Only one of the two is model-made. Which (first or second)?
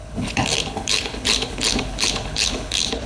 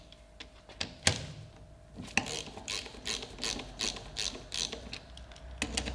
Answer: first